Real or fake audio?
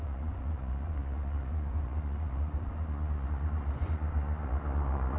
fake